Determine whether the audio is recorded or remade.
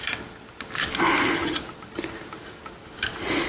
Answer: recorded